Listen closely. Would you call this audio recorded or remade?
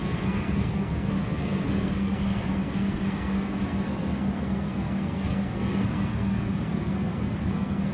remade